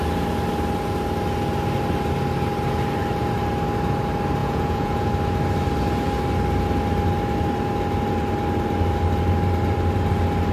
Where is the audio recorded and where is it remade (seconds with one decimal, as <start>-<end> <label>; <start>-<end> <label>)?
0.0-4.4 recorded; 4.4-5.1 remade; 5.1-10.5 recorded